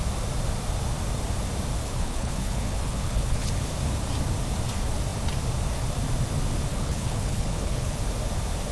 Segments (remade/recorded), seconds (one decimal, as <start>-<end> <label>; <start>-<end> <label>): 0.0-1.8 recorded; 1.8-3.5 remade; 3.5-6.7 recorded; 6.7-8.0 remade; 8.0-8.7 recorded